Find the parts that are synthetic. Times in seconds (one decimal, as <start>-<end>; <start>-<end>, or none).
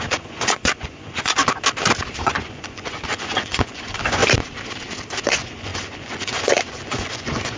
0.0-1.4; 2.2-4.2; 5.2-7.6